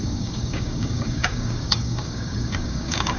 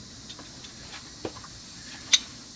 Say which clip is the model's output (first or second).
first